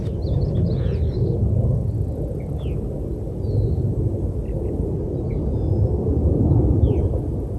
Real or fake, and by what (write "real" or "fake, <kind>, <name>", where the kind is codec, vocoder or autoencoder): real